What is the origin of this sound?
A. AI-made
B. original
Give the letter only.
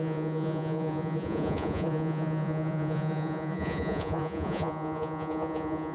A